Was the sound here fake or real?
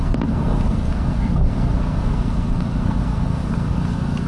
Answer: fake